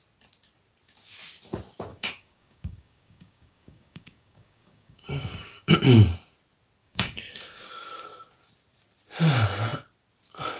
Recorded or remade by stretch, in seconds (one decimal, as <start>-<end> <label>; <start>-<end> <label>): 0.0-1.9 recorded; 1.9-5.7 remade; 5.7-6.8 recorded; 6.8-7.7 remade; 7.7-10.6 recorded